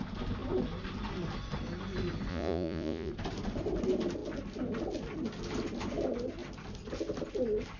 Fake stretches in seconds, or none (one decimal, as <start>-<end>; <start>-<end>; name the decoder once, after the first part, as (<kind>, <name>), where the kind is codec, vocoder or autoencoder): 2.3-3.1 (vocoder, Vocos)